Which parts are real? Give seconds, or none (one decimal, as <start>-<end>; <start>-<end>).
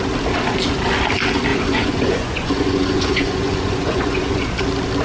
0.0-1.5; 4.5-5.0